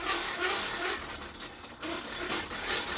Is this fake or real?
real